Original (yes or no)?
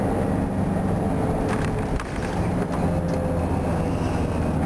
yes